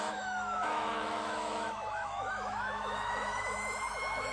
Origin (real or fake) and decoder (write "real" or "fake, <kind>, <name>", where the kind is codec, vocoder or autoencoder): fake, autoencoder, DAC-VAE